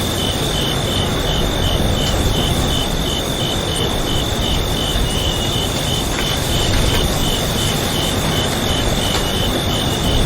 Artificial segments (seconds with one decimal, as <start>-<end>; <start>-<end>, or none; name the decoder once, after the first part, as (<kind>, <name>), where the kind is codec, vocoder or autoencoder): 0.0-10.3 (vocoder, BigVGAN v2)